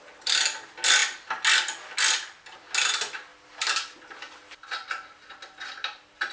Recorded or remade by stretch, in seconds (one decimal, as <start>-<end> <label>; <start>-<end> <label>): 0.0-6.3 recorded